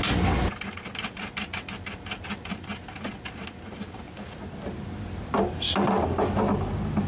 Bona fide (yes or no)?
yes